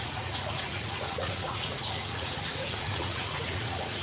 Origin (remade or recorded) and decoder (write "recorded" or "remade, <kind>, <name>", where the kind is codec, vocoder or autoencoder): remade, vocoder, Vocos